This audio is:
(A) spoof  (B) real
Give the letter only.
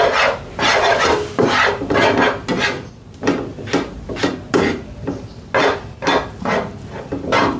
B